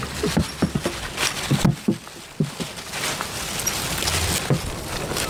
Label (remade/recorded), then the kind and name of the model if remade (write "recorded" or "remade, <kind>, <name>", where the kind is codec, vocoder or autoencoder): recorded